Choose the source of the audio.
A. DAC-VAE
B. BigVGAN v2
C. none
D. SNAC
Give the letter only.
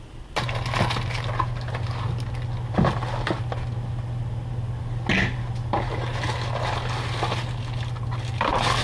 C